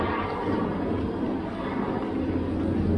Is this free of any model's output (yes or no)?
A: yes